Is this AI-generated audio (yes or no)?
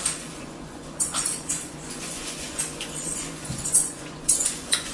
yes